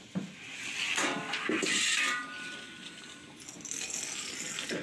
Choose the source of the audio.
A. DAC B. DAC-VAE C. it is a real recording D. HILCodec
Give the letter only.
C